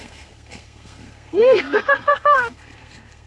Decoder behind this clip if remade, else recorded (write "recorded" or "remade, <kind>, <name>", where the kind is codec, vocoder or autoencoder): remade, codec, SNAC